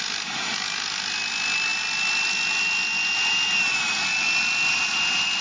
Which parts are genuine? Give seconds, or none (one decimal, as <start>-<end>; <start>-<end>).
0.0-5.4